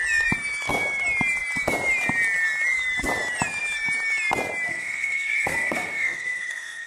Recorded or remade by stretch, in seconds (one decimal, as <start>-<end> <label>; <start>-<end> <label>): 0.0-4.7 recorded; 4.7-6.9 remade